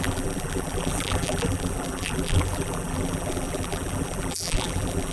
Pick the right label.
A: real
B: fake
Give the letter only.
B